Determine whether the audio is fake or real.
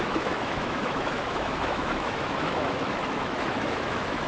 fake